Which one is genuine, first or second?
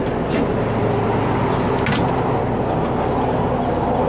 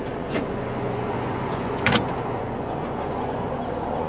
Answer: first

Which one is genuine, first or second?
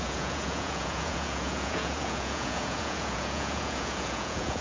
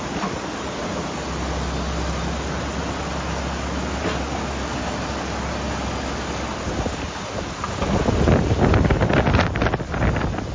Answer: second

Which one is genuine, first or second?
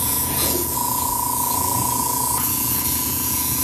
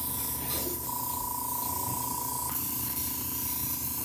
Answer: second